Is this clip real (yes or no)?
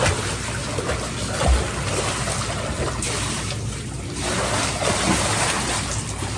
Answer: yes